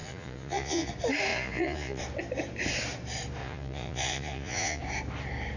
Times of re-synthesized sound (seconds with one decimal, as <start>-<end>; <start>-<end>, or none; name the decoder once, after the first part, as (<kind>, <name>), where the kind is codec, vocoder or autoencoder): 0.0-0.9 (vocoder, Vocos); 1.3-2.0; 3.4-4.8